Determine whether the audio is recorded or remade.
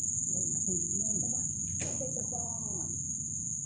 remade